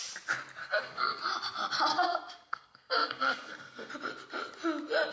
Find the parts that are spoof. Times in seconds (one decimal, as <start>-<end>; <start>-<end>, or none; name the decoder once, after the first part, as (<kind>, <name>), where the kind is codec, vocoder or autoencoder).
0.6-1.2 (codec, SNAC); 1.9-3.9